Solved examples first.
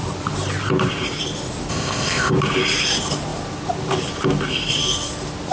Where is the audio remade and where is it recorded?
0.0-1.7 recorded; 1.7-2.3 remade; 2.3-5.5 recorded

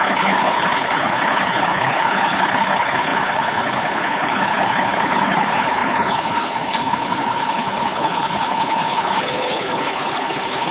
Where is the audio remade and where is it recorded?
0.0-10.7 remade

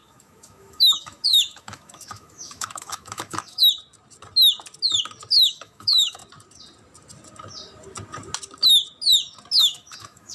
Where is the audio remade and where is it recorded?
0.0-3.6 remade; 3.6-5.4 recorded; 5.4-6.2 remade; 6.2-9.6 recorded; 9.6-10.3 remade

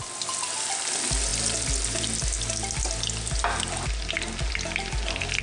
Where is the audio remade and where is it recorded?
0.0-5.4 recorded

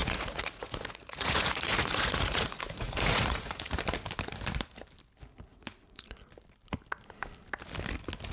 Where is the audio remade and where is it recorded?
0.0-3.8 remade; 3.8-5.5 recorded; 5.5-6.1 remade; 6.1-8.3 recorded

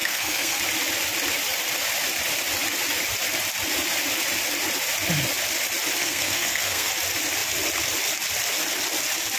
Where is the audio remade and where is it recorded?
0.0-0.6 remade; 0.6-6.0 recorded; 6.0-6.9 remade; 6.9-9.4 recorded

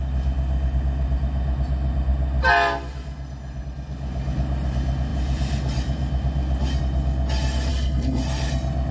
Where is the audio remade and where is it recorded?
0.0-7.7 recorded; 7.7-8.2 remade; 8.2-8.9 recorded